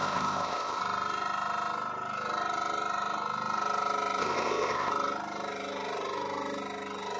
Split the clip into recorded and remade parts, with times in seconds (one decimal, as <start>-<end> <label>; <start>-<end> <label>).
0.0-0.8 remade; 0.8-4.2 recorded; 4.2-4.9 remade; 4.9-7.2 recorded